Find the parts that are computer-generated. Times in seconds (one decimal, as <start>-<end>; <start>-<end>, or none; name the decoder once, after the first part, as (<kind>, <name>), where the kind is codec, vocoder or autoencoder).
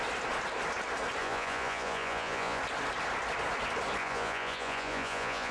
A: 1.2-2.6 (vocoder, Vocos); 4.0-5.5